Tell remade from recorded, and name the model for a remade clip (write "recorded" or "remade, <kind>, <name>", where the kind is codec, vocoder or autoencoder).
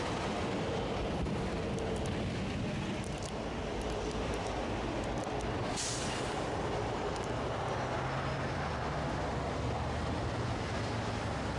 recorded